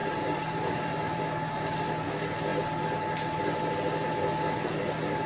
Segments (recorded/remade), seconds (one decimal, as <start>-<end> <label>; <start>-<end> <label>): 0.0-1.2 remade; 1.2-5.3 recorded